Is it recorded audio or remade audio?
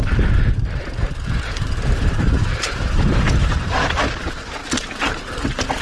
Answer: remade